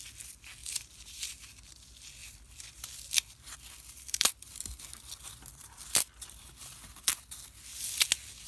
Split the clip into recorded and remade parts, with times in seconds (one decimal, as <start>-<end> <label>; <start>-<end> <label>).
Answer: 0.0-0.6 recorded; 0.6-1.2 remade; 1.2-2.2 recorded; 2.2-6.5 remade; 6.5-8.5 recorded